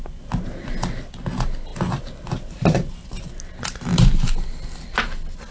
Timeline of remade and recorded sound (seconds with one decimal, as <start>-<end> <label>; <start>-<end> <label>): 0.0-5.5 recorded